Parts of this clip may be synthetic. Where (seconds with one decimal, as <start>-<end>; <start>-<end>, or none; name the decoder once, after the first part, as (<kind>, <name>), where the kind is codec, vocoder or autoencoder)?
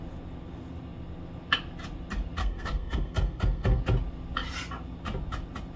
2.4-3.8 (codec, SNAC)